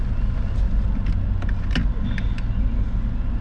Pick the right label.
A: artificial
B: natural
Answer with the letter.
B